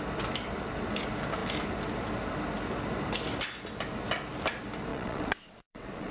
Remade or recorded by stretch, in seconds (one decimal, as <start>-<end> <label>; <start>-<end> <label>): 0.0-4.9 recorded; 4.9-6.1 remade